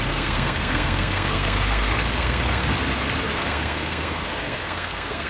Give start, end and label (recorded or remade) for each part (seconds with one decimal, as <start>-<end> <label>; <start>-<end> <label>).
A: 0.0-2.6 remade; 2.6-3.3 recorded; 3.3-5.3 remade